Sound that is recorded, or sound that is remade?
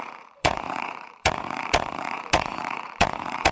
remade